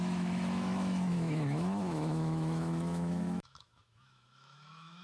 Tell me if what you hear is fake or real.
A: fake